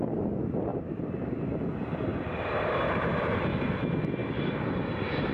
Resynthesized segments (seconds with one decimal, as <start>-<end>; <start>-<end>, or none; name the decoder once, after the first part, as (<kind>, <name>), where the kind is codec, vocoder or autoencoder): 0.7-1.6 (vocoder, BigVGAN v2); 2.1-3.4; 4.2-4.8

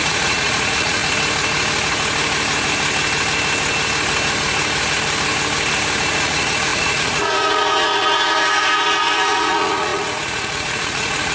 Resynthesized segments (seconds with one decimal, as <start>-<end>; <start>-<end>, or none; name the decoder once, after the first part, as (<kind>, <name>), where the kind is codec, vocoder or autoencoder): 0.0-1.0 (vocoder, Vocos); 6.1-11.3

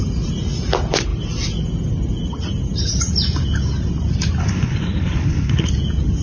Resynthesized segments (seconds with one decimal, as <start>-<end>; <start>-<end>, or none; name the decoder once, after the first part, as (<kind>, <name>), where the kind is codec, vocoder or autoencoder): 4.4-5.7 (codec, HILCodec)